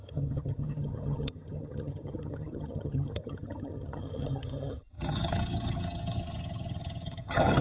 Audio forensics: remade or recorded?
remade